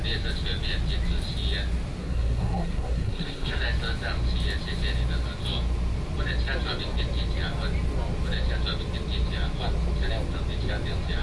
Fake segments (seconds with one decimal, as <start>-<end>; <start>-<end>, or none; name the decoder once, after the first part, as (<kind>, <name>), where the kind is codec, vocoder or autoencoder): 2.0-3.6 (codec, SNAC)